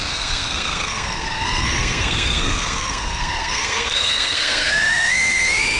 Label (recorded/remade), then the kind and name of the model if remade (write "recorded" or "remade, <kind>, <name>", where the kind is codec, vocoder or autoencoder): remade, codec, SNAC